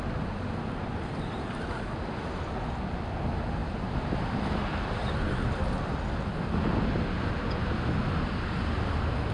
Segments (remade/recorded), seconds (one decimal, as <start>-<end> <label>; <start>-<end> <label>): 0.0-9.3 recorded